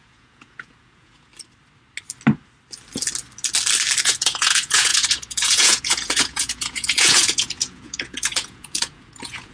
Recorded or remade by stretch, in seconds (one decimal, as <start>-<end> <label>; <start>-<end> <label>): 0.0-1.3 remade; 1.3-4.0 recorded; 4.0-9.5 remade